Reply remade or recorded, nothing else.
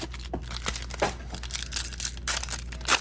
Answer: recorded